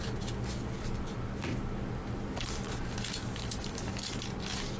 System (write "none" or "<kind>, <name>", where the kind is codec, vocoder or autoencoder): none